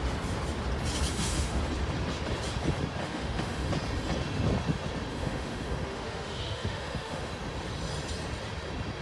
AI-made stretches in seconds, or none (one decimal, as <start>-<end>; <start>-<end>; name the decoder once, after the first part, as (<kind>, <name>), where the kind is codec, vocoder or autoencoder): 1.1-1.6 (autoencoder, DAC-VAE); 3.0-3.7; 5.1-7.3